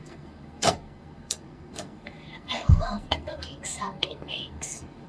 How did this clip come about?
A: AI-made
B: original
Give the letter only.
A